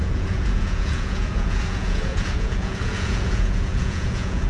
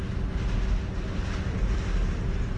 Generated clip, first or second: first